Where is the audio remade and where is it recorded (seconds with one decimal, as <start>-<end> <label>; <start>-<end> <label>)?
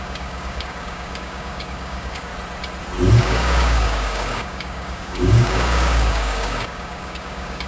0.0-2.3 remade; 2.3-3.2 recorded; 3.2-7.7 remade